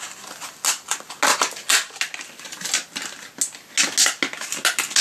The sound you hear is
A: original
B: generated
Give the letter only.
A